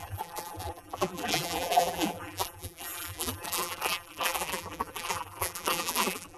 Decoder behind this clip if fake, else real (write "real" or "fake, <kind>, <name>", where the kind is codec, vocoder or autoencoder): fake, vocoder, BigVGAN v2